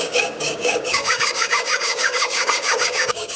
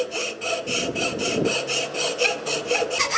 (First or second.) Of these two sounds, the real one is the second